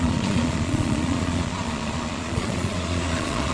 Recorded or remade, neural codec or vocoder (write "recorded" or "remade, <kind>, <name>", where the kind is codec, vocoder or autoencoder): remade, vocoder, Vocos